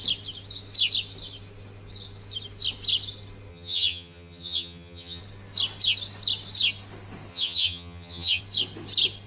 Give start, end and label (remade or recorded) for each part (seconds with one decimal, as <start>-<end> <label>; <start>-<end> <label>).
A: 0.0-3.5 recorded; 3.5-5.2 remade; 5.2-7.3 recorded; 7.3-8.4 remade; 8.4-9.3 recorded